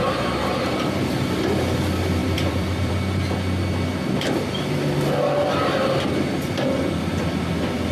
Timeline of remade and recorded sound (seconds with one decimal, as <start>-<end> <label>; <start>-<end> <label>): 0.0-2.2 recorded; 2.2-2.9 remade; 2.9-7.9 recorded